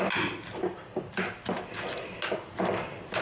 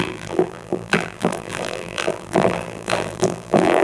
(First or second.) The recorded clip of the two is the first